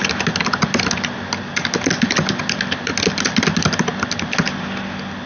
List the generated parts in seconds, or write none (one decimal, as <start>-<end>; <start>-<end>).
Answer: none